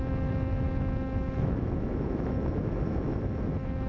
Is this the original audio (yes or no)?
no